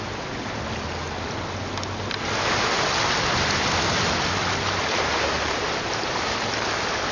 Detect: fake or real real